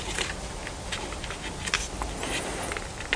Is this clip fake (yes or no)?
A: no